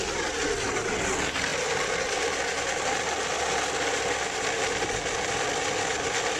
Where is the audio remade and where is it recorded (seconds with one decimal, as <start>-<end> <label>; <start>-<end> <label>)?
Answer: 0.0-6.4 recorded

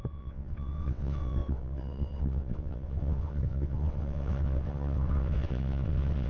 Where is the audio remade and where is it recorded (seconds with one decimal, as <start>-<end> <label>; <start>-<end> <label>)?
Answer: 0.0-6.3 remade

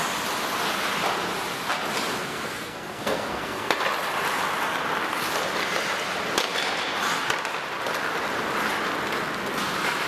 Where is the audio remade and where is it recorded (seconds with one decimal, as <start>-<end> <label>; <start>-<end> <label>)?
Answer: 0.0-2.2 recorded; 2.2-3.8 remade; 3.8-10.1 recorded

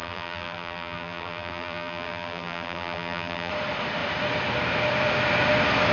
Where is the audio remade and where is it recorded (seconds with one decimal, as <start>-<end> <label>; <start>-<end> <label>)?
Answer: 0.0-3.5 remade; 3.5-5.9 recorded